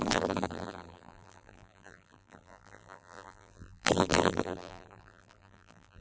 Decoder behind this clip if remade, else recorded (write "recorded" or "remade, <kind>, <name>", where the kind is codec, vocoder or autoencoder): remade, vocoder, BigVGAN v2